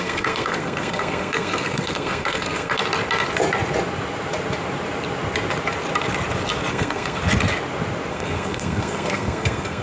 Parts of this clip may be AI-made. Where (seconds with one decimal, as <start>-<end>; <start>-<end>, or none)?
0.0-2.8; 6.7-7.2; 8.1-9.8